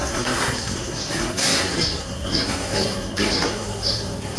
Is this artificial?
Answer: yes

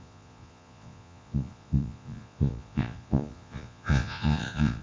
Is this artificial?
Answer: yes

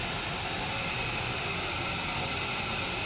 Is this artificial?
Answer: no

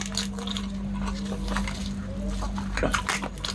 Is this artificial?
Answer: no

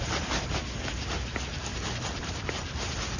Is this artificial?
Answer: no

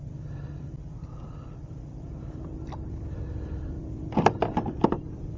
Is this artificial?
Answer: yes